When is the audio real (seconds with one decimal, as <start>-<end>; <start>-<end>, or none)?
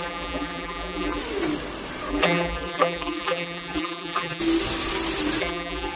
1.2-2.1; 4.4-5.4